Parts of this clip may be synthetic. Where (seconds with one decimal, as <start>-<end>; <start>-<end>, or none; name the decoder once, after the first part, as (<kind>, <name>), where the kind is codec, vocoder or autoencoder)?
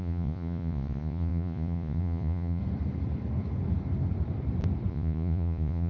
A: 0.0-2.6 (vocoder, Vocos); 4.9-5.9